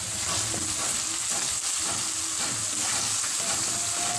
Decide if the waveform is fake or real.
real